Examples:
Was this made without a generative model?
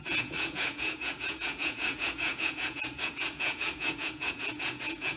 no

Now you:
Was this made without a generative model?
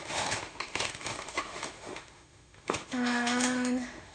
no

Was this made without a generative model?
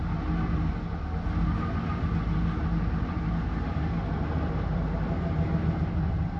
yes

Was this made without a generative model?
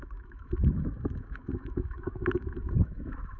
no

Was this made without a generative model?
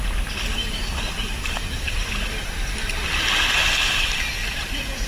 yes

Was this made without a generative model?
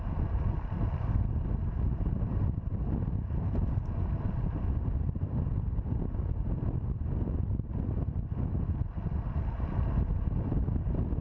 yes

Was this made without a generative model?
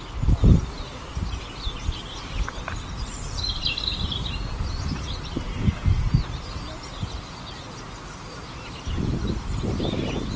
yes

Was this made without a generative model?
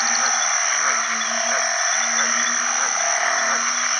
yes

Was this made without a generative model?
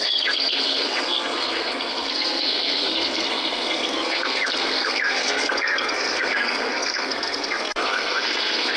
no